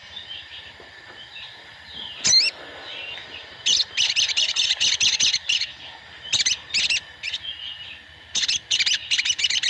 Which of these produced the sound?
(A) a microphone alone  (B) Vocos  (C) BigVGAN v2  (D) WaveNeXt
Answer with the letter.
A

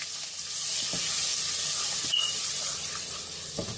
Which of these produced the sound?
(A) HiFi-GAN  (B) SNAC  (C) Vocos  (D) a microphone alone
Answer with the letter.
D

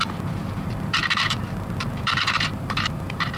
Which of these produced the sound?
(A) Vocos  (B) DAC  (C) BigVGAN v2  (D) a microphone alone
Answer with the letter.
C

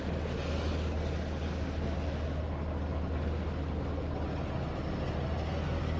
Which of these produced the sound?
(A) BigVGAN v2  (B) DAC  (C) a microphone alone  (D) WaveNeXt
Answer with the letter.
C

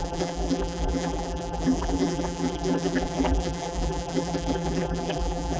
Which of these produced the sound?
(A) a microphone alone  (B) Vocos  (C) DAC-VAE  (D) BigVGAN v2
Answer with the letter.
D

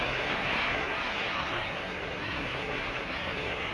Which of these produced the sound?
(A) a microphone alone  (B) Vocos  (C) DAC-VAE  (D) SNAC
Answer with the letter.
D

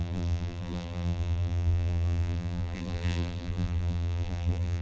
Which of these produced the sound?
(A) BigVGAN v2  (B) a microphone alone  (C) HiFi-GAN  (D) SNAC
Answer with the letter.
A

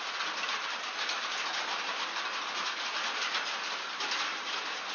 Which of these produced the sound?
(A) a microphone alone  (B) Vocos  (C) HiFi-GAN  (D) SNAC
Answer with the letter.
A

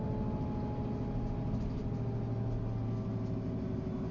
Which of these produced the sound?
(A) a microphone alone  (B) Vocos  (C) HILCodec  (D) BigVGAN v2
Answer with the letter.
A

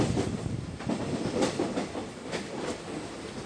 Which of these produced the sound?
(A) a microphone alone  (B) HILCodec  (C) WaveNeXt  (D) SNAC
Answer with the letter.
A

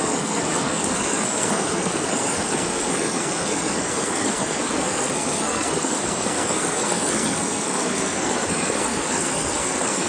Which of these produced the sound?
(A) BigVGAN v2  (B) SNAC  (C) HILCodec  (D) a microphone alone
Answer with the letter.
B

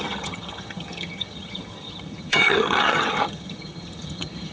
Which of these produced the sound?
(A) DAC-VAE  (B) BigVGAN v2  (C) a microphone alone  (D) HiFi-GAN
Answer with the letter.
D